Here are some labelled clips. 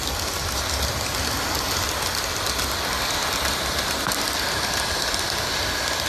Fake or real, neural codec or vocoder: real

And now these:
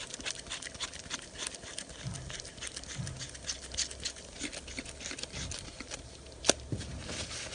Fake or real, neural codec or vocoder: real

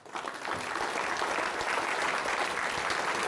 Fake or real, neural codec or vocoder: real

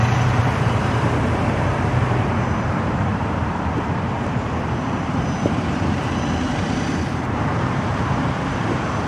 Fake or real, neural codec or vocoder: fake, vocoder, BigVGAN v2